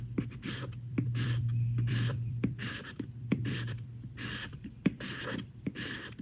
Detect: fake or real fake